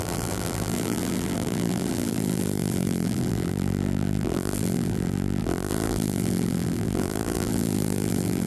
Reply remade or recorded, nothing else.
remade